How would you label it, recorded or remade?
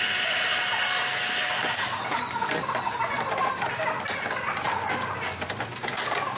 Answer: recorded